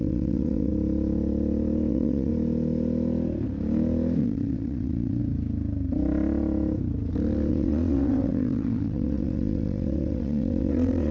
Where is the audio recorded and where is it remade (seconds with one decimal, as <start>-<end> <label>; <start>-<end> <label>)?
0.0-0.7 remade; 0.7-1.9 recorded; 1.9-2.3 remade; 2.3-4.2 recorded; 4.2-5.2 remade; 5.2-7.5 recorded; 7.5-11.1 remade